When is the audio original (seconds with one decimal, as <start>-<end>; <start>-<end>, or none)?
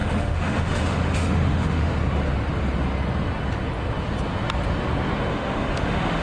1.9-5.3